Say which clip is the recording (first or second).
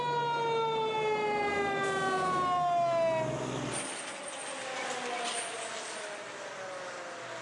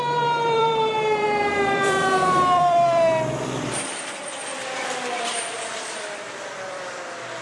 first